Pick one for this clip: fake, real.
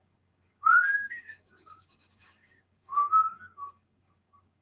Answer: fake